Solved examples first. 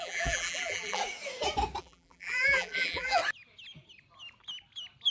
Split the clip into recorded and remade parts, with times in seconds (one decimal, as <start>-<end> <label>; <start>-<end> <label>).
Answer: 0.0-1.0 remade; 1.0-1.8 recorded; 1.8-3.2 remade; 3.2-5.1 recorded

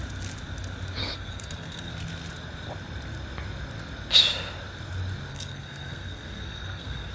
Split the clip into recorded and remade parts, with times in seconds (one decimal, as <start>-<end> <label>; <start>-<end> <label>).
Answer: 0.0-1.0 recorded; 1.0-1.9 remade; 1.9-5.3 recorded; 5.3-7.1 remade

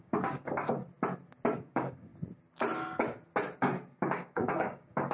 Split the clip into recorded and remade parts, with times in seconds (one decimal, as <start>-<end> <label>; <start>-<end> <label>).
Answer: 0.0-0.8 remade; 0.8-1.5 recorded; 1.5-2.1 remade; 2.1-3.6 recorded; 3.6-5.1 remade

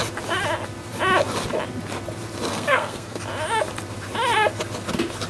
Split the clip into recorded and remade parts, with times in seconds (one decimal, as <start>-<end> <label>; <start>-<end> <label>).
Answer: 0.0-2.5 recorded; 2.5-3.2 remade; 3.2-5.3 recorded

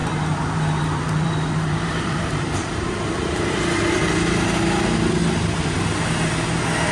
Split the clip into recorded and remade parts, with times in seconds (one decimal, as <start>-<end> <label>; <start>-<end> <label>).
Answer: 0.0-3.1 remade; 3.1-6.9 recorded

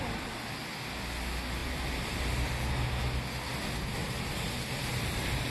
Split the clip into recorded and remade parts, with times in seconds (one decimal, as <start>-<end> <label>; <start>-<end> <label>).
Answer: 0.0-1.6 recorded; 1.6-2.7 remade; 2.7-4.0 recorded; 4.0-5.5 remade

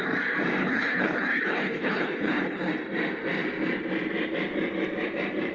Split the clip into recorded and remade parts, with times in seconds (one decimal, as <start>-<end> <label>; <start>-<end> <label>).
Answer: 0.0-0.6 recorded; 0.6-2.7 remade; 2.7-5.5 recorded